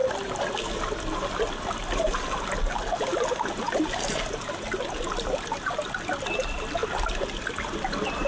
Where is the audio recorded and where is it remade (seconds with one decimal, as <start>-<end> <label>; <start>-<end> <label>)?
0.0-8.3 recorded